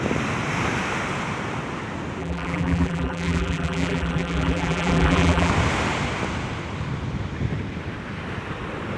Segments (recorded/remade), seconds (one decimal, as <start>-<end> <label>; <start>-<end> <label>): 0.0-2.2 recorded; 2.2-5.5 remade; 5.5-9.0 recorded